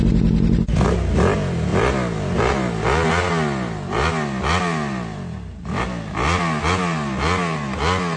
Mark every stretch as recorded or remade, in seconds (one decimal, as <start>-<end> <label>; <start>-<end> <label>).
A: 0.0-8.2 recorded